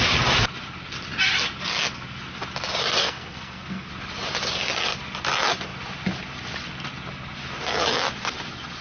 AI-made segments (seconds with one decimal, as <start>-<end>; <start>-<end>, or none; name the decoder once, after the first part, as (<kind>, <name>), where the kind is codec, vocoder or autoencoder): 3.0-3.9 (codec, SNAC)